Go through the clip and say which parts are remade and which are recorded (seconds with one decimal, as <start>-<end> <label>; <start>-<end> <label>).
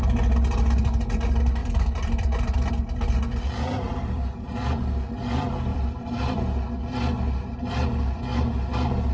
0.0-1.6 recorded; 1.6-2.7 remade; 2.7-3.9 recorded; 3.9-5.1 remade; 5.1-5.7 recorded; 5.7-6.4 remade; 6.4-9.1 recorded